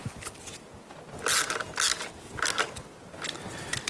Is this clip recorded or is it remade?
recorded